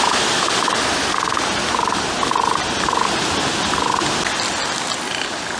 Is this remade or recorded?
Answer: recorded